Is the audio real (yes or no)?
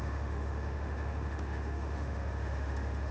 no